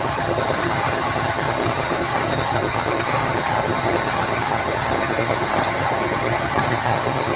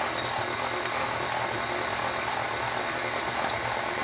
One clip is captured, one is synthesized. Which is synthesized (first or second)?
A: first